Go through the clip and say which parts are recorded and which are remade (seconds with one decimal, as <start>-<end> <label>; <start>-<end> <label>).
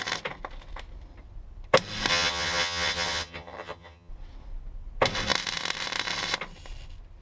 0.0-2.1 recorded; 2.1-4.1 remade; 4.1-7.2 recorded